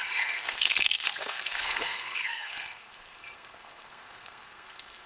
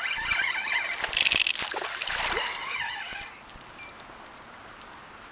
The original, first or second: second